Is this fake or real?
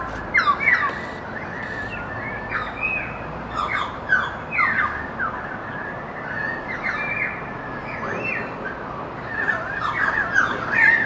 real